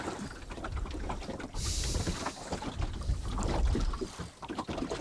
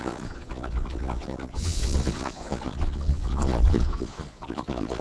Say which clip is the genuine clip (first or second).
first